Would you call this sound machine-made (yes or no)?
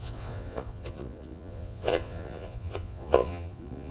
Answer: yes